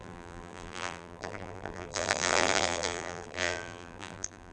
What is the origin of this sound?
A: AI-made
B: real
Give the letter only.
A